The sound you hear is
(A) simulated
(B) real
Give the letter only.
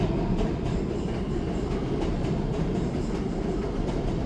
B